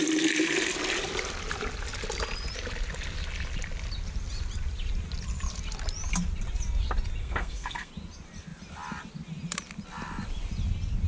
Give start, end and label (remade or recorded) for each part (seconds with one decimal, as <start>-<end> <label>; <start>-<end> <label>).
0.0-7.2 recorded; 7.2-7.9 remade; 7.9-11.1 recorded